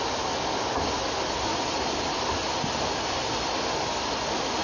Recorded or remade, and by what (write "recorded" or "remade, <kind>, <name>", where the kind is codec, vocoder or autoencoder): recorded